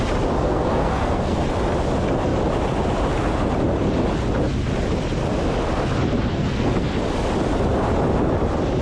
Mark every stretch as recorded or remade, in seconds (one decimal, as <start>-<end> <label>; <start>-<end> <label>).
0.0-0.4 recorded; 0.4-1.4 remade; 1.4-6.3 recorded; 6.3-6.9 remade; 6.9-8.8 recorded